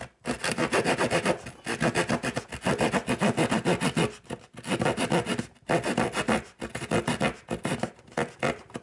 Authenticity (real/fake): real